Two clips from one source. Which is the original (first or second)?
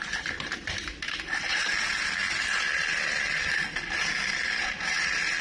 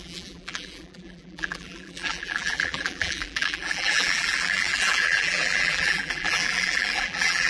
first